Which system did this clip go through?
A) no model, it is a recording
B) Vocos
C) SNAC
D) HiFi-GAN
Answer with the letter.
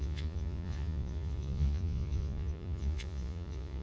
B